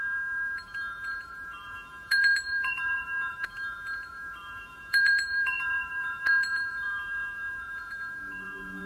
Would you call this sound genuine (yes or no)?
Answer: no